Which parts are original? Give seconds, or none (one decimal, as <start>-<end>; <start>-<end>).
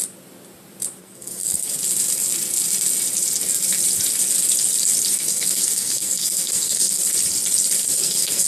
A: 0.0-1.0; 1.7-5.1; 7.0-7.8